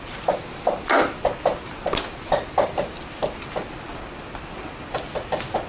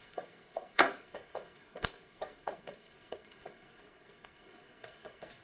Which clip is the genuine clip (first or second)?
first